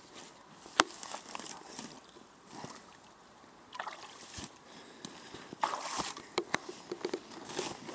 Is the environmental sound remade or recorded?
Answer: recorded